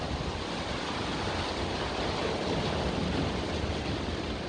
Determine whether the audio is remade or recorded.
recorded